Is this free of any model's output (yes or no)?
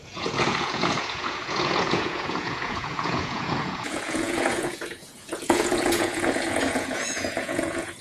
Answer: no